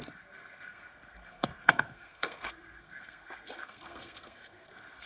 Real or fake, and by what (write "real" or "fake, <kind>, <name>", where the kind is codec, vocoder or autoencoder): fake, codec, SNAC